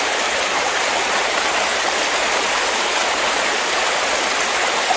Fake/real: fake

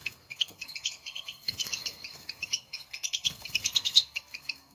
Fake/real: fake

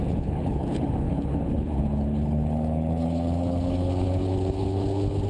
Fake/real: fake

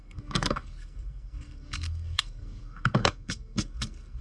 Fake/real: fake